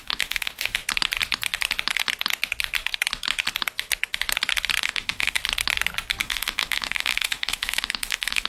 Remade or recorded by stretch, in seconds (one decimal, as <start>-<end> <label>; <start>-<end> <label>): 0.0-0.8 remade; 0.8-4.8 recorded; 4.8-5.4 remade; 5.4-6.2 recorded; 6.2-8.5 remade